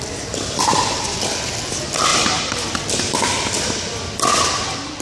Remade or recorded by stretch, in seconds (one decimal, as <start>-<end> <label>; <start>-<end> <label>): 0.0-5.0 recorded

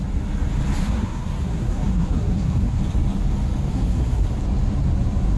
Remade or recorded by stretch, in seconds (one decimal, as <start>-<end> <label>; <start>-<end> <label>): 0.0-0.8 recorded; 0.8-2.8 remade; 2.8-3.7 recorded; 3.7-4.3 remade; 4.3-5.4 recorded

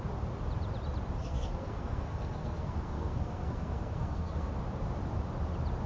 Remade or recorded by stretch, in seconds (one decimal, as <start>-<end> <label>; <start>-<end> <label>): 0.0-1.2 recorded; 1.2-4.5 remade; 4.5-5.9 recorded

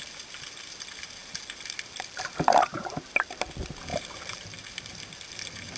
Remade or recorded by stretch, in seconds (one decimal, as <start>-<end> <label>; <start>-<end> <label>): 0.0-1.2 recorded; 1.2-3.1 remade; 3.1-3.9 recorded; 3.9-5.0 remade; 5.0-5.8 recorded

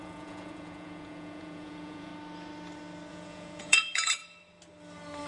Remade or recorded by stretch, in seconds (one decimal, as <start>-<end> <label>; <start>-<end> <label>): 0.0-2.1 remade; 2.1-3.1 recorded; 3.1-4.2 remade; 4.2-5.3 recorded